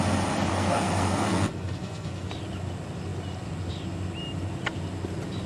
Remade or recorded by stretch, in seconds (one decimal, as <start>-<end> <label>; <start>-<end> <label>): 0.0-0.5 recorded; 0.5-2.3 remade; 2.3-5.5 recorded